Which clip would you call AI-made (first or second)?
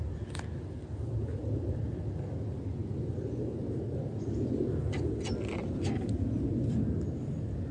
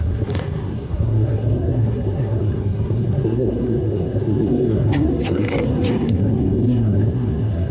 second